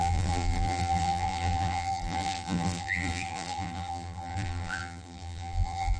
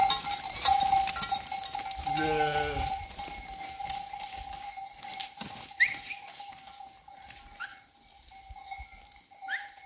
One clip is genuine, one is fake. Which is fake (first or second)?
first